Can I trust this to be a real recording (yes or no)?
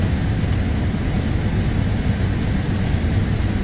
yes